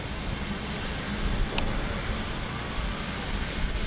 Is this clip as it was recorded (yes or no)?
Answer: yes